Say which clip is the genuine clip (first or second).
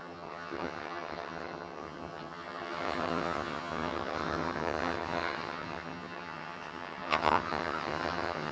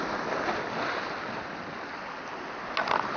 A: second